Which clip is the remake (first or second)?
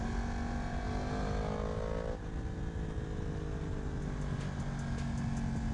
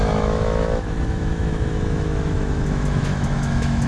second